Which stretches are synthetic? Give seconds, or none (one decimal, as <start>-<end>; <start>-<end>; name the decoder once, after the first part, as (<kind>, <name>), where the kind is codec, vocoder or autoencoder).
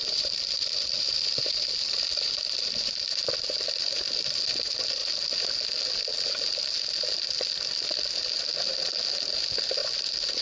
0.0-4.4 (vocoder, BigVGAN v2); 9.8-10.4